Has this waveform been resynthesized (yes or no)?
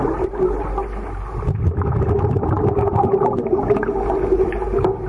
no